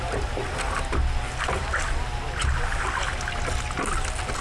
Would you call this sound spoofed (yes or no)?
no